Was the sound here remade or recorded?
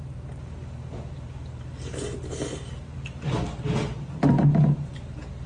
recorded